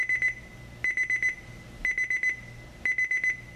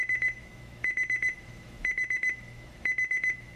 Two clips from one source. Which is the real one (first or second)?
first